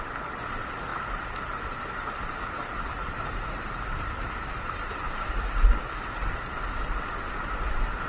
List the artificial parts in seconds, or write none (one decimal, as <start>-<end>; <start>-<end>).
0.9-5.8